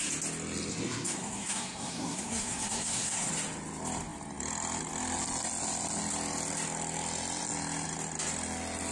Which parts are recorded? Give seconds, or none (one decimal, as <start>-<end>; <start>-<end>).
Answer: 0.0-0.7; 3.3-8.9